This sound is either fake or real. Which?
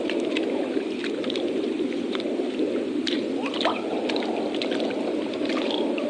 real